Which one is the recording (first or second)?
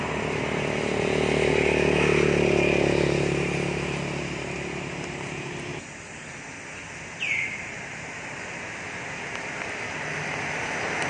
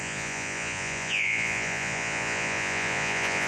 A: first